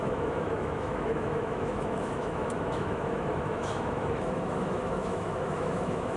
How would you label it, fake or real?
fake